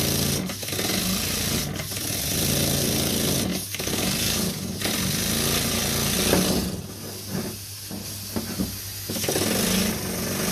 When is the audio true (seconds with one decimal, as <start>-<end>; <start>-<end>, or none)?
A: 0.0-3.5; 4.9-10.5